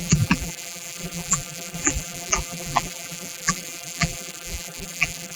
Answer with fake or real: fake